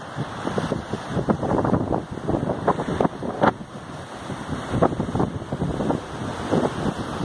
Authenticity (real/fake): real